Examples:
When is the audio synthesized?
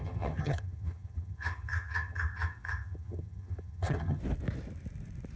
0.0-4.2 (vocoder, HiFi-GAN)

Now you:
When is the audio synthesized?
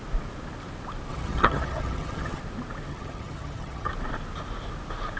1.1-2.4 (vocoder, HiFi-GAN); 2.9-3.9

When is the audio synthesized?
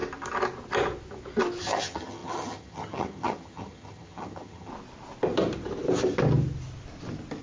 1.6-4.7 (vocoder, HiFi-GAN)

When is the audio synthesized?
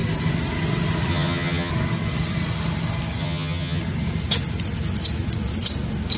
1.1-1.7 (vocoder, HiFi-GAN); 3.2-3.8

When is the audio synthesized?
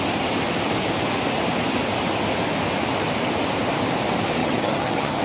4.4-5.2 (vocoder, HiFi-GAN)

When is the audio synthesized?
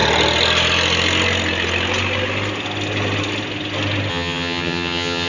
4.1-5.3 (vocoder, HiFi-GAN)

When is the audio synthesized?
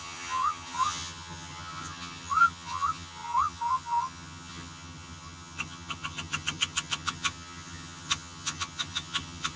0.0-9.6 (vocoder, HiFi-GAN)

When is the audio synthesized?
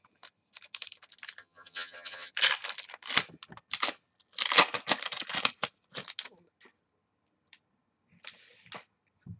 1.4-2.3 (vocoder, HiFi-GAN)